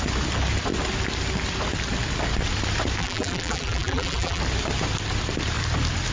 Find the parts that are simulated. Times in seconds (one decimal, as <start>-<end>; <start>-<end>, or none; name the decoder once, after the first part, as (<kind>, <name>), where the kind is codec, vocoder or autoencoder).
3.0-4.4 (vocoder, BigVGAN v2)